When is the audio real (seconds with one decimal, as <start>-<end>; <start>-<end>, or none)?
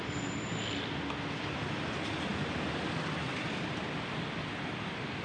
0.0-2.3; 3.8-5.2